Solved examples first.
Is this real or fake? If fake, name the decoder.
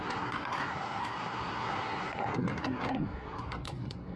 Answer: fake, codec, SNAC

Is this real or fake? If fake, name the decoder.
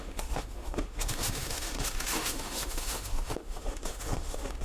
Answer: fake, autoencoder, DAC-VAE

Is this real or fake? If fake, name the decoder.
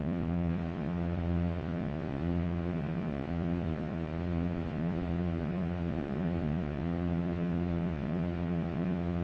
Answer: fake, vocoder, Vocos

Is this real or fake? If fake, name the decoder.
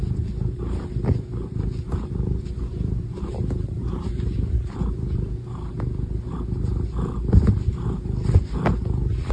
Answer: real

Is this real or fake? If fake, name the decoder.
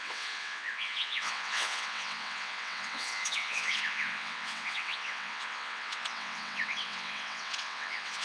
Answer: fake, vocoder, WaveNeXt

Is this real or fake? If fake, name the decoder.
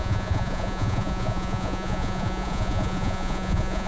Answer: fake, vocoder, Vocos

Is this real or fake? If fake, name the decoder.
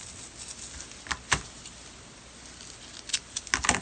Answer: real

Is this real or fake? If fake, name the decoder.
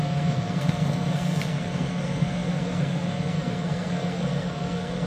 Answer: fake, codec, SNAC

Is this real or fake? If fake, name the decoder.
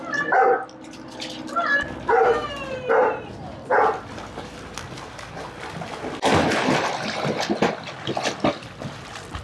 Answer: real